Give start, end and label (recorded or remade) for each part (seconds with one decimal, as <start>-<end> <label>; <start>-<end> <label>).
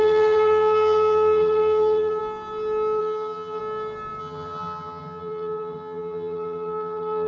0.0-2.2 remade; 2.2-3.0 recorded; 3.0-3.6 remade; 3.6-4.2 recorded; 4.2-7.3 remade